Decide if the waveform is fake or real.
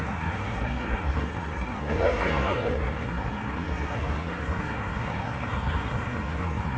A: fake